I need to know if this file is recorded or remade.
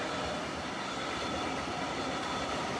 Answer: recorded